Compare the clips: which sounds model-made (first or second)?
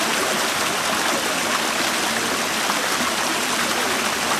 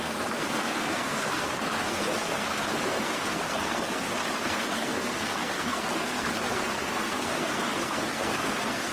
second